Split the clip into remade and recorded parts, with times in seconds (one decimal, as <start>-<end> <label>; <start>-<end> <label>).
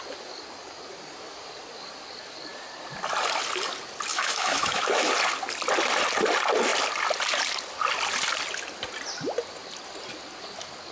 0.0-4.1 recorded; 4.1-5.1 remade; 5.1-10.9 recorded